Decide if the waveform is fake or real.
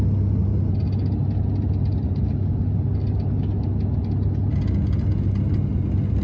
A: real